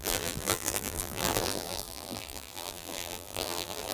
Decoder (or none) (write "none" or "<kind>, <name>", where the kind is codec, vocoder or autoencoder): vocoder, BigVGAN v2